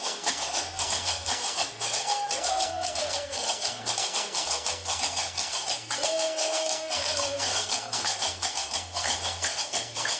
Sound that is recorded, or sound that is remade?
remade